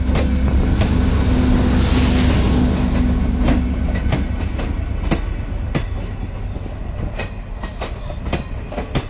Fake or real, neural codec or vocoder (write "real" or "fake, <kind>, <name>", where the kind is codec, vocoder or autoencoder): real